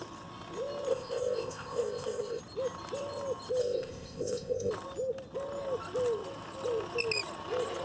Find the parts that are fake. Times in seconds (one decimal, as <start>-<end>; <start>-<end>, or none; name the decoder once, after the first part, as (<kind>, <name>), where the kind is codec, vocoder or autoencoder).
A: 0.9-2.4 (codec, ZipCodec); 3.6-4.7

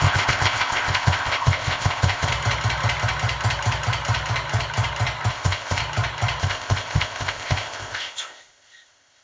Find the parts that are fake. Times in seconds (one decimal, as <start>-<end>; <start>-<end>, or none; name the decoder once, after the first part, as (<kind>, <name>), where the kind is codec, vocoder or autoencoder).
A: 0.0-2.3 (codec, ZipCodec); 5.3-5.8; 6.4-9.2

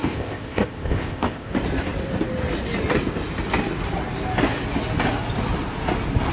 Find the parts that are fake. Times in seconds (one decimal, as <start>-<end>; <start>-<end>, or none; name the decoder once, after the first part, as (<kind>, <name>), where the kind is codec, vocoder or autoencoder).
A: 0.0-1.5 (codec, ZipCodec)

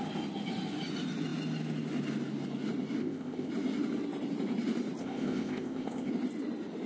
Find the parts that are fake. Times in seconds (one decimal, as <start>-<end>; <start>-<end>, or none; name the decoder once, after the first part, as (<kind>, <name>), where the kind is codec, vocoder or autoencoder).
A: 3.0-3.5 (codec, ZipCodec); 5.0-6.1

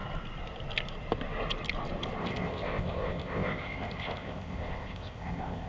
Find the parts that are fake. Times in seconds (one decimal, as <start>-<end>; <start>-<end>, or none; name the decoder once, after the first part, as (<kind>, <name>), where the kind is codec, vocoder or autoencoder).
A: 2.2-5.7 (codec, ZipCodec)

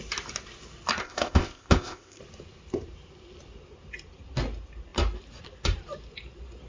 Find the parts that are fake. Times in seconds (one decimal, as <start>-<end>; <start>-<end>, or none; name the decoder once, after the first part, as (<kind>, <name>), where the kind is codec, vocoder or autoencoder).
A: 1.0-2.2 (codec, ZipCodec)

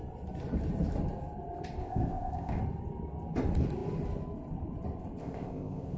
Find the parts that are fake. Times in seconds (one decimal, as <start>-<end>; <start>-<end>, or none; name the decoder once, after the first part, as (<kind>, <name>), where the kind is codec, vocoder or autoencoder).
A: 1.8-2.6 (codec, ZipCodec); 5.2-6.0